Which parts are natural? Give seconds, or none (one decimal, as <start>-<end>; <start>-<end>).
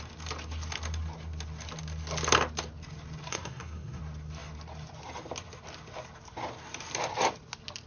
0.0-3.3; 4.0-7.9